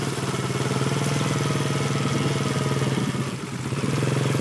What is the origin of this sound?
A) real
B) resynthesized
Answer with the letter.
A